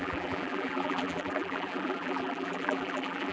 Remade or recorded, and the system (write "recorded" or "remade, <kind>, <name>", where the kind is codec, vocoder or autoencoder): remade, vocoder, BigVGAN v2